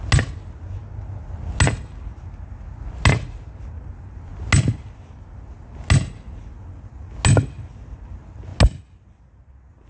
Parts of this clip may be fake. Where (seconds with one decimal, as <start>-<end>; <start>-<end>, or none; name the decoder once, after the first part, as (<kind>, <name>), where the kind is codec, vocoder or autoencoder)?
none